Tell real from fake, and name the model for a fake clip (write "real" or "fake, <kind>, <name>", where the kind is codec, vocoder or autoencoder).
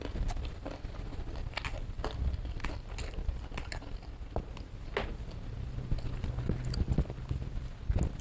real